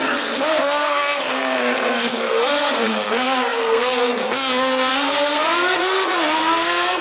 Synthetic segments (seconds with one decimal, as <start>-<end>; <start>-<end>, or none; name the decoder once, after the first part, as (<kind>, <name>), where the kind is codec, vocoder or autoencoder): 0.0-7.0 (codec, SNAC)

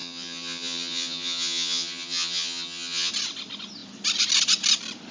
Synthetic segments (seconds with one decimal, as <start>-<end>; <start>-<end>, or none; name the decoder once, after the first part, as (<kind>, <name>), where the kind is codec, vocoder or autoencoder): 0.0-3.1 (vocoder, HiFi-GAN)

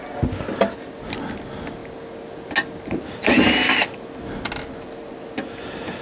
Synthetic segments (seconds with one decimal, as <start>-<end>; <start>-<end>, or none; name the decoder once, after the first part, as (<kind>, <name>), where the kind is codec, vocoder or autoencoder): none

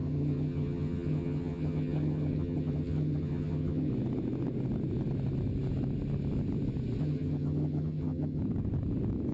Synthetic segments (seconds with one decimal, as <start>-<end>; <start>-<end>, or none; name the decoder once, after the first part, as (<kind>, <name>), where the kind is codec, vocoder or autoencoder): 0.0-3.9 (vocoder, HiFi-GAN); 7.0-8.4

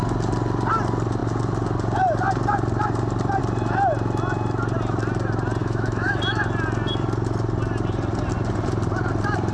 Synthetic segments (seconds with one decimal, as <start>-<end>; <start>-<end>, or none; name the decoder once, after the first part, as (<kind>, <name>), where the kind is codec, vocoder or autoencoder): 5.6-6.2 (autoencoder, DAC-VAE)

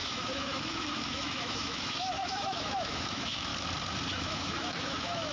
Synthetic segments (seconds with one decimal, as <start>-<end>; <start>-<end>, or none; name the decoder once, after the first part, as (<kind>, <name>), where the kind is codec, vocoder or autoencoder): 0.0-3.5 (autoencoder, DAC-VAE); 4.1-5.3

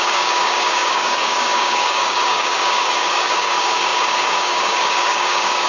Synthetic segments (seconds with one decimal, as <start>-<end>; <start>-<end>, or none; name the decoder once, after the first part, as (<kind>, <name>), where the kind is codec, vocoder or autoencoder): 0.0-5.7 (codec, DAC)

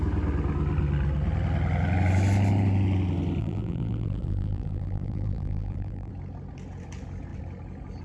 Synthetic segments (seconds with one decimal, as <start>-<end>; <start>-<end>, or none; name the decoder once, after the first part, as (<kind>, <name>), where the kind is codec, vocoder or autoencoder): 3.4-6.1 (vocoder, BigVGAN v2)